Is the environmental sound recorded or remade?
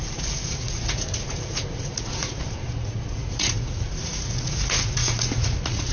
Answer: remade